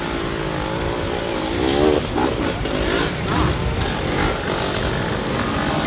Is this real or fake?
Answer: real